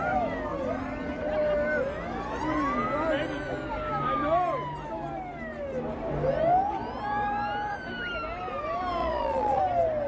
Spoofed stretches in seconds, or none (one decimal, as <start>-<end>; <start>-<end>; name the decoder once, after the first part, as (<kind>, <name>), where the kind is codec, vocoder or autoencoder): 9.0-9.6 (vocoder, Vocos)